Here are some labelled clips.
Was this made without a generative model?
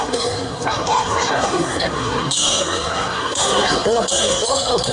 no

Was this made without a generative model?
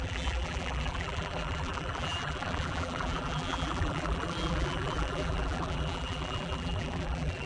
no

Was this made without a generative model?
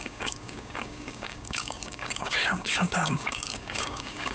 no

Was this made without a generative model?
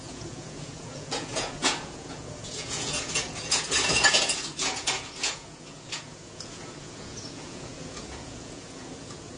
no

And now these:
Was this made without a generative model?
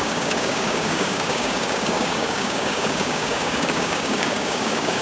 no